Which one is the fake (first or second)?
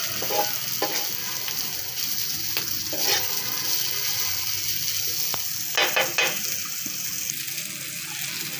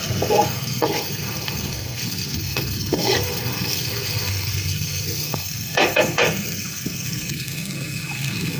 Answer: second